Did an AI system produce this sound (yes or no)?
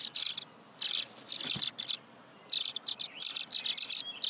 no